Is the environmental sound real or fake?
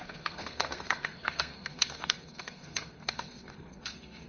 fake